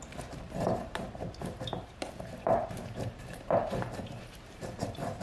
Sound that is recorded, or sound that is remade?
remade